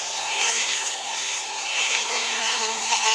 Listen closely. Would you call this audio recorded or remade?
remade